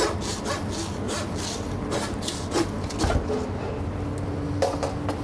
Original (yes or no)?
yes